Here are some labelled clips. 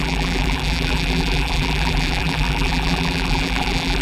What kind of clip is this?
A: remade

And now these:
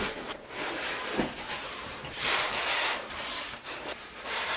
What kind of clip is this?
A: remade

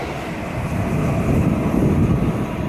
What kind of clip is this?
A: recorded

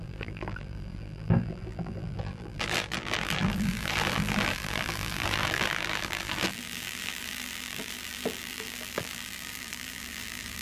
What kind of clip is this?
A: remade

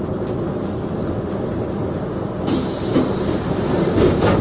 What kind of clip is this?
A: recorded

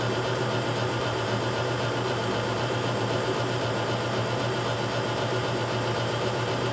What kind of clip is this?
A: remade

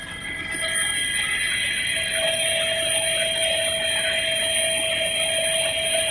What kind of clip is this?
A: recorded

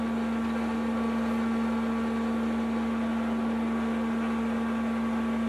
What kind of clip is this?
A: recorded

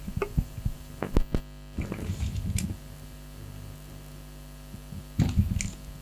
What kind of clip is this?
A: recorded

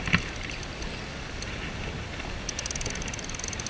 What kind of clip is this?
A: recorded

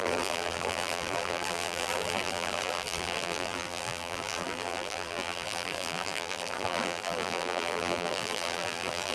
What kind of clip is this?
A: remade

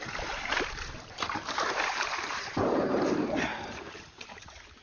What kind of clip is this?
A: remade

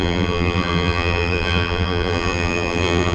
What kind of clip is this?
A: remade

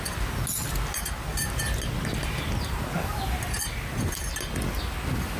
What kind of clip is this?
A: recorded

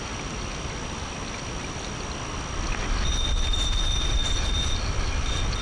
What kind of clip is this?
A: recorded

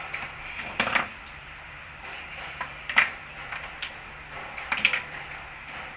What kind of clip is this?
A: remade